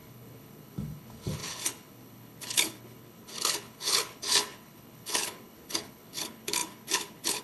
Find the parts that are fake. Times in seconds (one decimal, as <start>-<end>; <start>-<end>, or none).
0.0-7.4